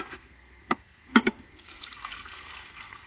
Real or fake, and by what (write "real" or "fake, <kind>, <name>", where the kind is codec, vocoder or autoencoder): fake, codec, SNAC